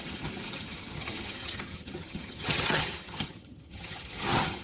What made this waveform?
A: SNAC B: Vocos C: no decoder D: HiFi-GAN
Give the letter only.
D